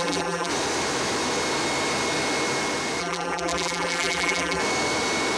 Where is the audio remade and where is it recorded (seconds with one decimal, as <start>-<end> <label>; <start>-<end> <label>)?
0.0-0.5 remade; 0.5-3.0 recorded; 3.0-4.6 remade; 4.6-5.4 recorded